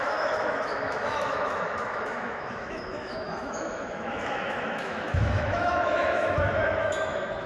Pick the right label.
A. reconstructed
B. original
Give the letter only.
A